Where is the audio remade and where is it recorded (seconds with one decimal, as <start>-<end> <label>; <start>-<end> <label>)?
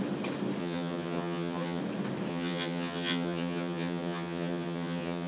0.0-0.6 recorded; 0.6-1.8 remade; 1.8-2.3 recorded; 2.3-5.3 remade